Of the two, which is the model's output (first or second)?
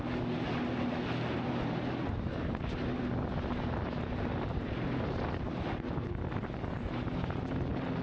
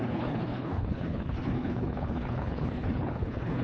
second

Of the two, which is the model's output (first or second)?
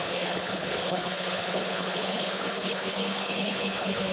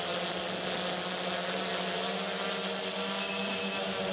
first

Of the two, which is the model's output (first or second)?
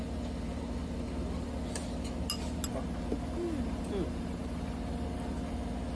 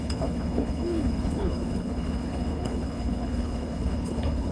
second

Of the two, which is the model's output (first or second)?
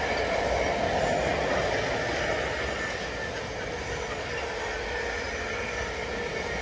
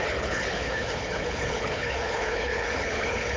second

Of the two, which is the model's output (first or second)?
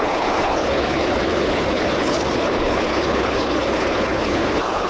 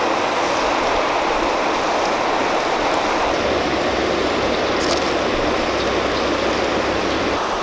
first